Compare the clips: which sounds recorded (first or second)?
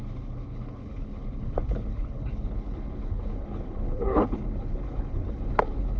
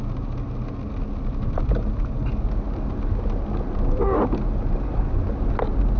second